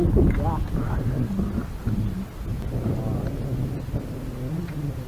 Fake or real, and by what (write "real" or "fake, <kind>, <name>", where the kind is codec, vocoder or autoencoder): real